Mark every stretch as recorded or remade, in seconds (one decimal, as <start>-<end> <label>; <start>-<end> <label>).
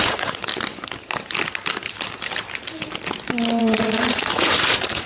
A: 0.0-0.5 remade; 0.5-3.6 recorded; 3.6-5.1 remade